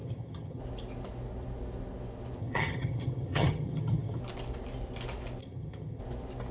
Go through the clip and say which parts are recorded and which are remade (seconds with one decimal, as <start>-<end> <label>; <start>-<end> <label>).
0.0-0.6 remade; 0.6-2.4 recorded; 2.4-4.2 remade; 4.2-5.4 recorded; 5.4-6.0 remade; 6.0-6.5 recorded